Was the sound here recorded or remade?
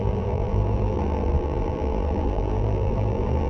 remade